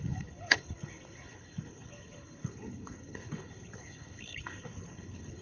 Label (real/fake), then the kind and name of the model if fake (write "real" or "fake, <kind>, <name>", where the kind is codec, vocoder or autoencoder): fake, codec, HILCodec